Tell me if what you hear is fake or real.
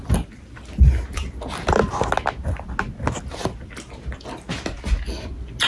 real